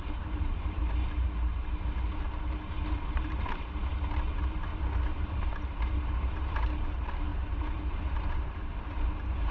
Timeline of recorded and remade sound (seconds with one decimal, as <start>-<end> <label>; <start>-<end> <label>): 0.0-0.8 remade; 0.8-3.0 recorded; 3.0-4.7 remade; 4.7-5.3 recorded; 5.3-9.5 remade

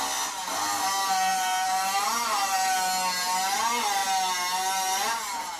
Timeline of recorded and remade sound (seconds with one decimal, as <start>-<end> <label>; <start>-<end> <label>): 0.0-1.3 recorded; 1.3-2.5 remade; 2.5-5.6 recorded

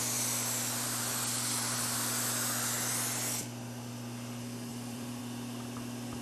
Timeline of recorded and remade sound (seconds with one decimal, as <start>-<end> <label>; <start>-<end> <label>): 0.0-4.7 recorded; 4.7-5.2 remade; 5.2-6.2 recorded

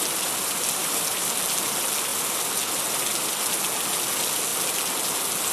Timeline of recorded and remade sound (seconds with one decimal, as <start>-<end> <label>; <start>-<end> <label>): 0.0-0.8 recorded; 0.8-1.3 remade; 1.3-5.5 recorded

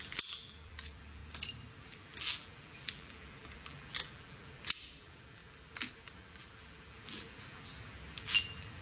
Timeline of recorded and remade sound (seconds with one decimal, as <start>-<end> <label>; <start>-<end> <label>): 0.0-1.2 remade; 1.2-1.8 recorded; 1.8-8.8 remade

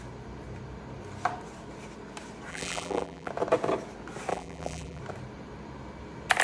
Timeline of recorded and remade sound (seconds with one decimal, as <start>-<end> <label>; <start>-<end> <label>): 0.0-2.5 recorded; 2.5-3.3 remade; 3.3-4.3 recorded; 4.3-5.0 remade; 5.0-6.4 recorded

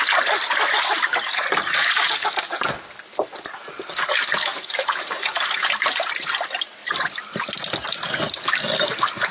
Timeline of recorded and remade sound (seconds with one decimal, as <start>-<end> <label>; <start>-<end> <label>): 0.0-4.5 recorded; 4.5-6.1 remade; 6.1-9.3 recorded

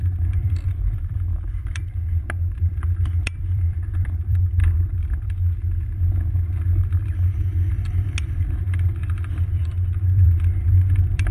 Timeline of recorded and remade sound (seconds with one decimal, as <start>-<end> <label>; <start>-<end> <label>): 0.0-1.8 remade; 1.8-2.6 recorded; 2.6-4.6 remade; 4.6-9.5 recorded; 9.5-11.3 remade